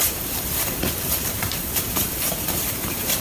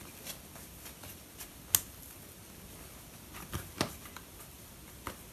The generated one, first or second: first